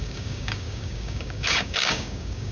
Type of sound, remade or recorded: remade